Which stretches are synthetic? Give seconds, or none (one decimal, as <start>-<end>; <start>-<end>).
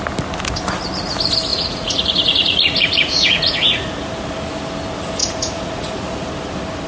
1.5-3.9; 5.2-6.3